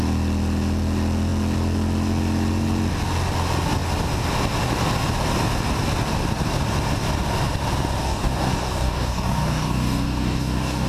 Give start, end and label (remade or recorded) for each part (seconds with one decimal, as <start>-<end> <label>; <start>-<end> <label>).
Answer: 0.0-8.0 recorded; 8.0-10.9 remade